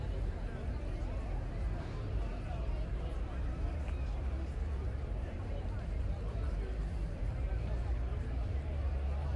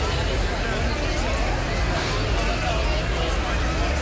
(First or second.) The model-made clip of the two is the first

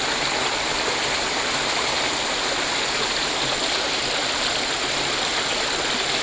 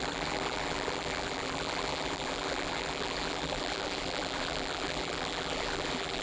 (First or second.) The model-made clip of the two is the second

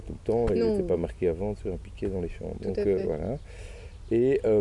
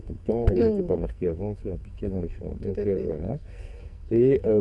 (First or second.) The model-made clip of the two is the second